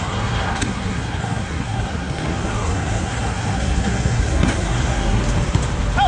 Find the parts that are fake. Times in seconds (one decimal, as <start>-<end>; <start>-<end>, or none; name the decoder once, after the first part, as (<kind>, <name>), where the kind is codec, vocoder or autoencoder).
0.0-5.2 (codec, SNAC)